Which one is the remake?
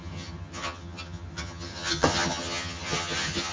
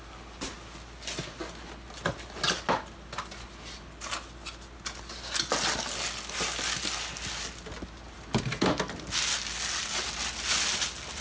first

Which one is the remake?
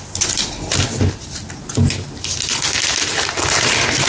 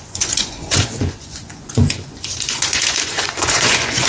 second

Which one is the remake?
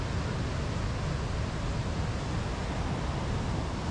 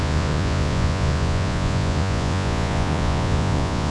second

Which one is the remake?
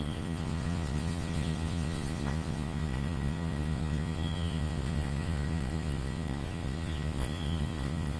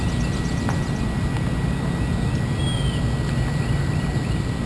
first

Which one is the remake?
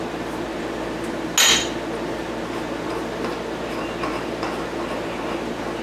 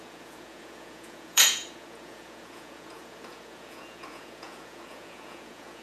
second